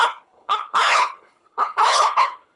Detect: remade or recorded remade